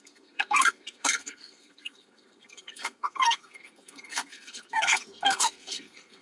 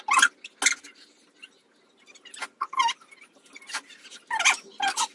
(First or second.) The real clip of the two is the second